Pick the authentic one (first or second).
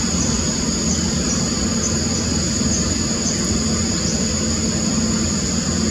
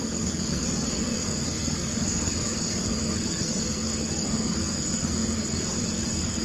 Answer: first